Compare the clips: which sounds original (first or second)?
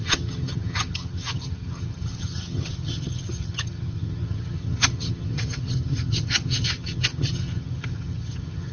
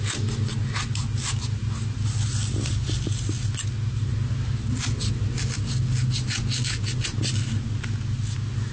second